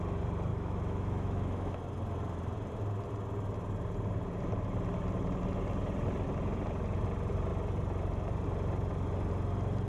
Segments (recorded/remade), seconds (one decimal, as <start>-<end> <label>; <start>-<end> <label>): 0.0-0.5 recorded; 0.5-1.8 remade; 1.8-9.9 recorded